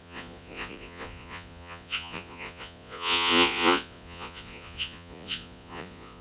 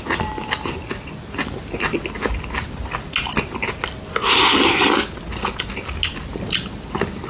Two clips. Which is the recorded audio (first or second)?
second